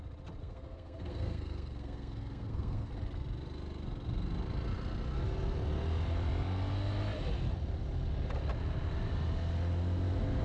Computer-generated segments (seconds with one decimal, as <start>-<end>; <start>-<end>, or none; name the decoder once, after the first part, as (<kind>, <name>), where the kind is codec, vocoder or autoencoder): 0.4-2.9 (codec, SNAC)